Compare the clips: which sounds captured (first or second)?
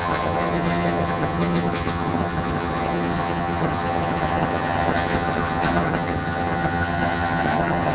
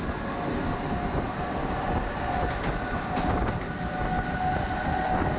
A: second